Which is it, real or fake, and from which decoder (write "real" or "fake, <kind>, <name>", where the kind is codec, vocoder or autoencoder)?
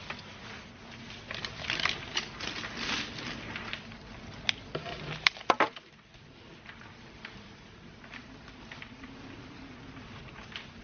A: real